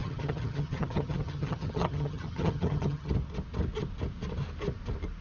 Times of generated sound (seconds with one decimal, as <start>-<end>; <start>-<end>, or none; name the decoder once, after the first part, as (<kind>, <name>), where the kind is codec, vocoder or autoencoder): 0.0-3.1 (vocoder, HiFi-GAN)